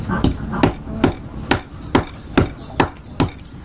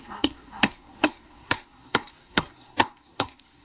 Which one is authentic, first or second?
first